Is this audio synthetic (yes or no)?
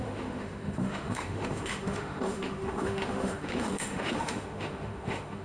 yes